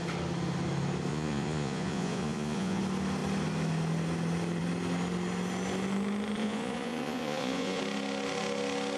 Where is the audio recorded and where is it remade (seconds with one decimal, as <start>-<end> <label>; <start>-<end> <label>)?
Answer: 0.0-1.1 recorded; 1.1-2.8 remade; 2.8-6.4 recorded; 6.4-7.8 remade; 7.8-9.0 recorded